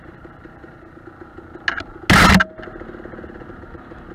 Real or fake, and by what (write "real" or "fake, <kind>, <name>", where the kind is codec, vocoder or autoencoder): real